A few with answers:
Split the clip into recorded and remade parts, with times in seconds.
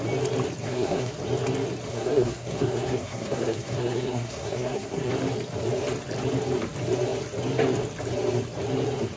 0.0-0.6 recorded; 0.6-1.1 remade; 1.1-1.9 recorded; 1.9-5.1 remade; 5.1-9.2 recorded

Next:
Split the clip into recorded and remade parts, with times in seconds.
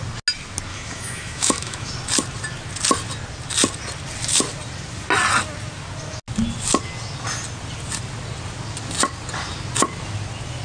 0.0-0.7 recorded; 0.7-1.9 remade; 1.9-10.6 recorded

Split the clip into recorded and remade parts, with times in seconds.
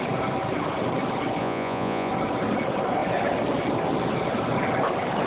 0.0-1.4 recorded; 1.4-2.1 remade; 2.1-5.3 recorded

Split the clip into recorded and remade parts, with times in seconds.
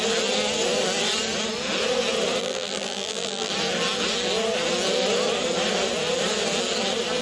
0.0-2.4 recorded; 2.4-3.5 remade; 3.5-7.2 recorded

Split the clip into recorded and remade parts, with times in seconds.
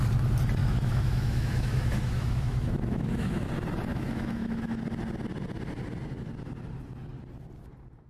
0.0-0.6 recorded; 0.6-3.5 remade; 3.5-3.9 recorded; 3.9-4.8 remade; 4.8-8.1 recorded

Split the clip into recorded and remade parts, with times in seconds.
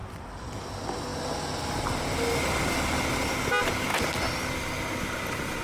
0.0-0.6 remade; 0.6-3.9 recorded; 3.9-4.4 remade; 4.4-5.6 recorded